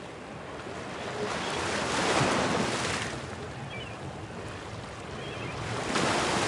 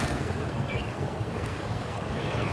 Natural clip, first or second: first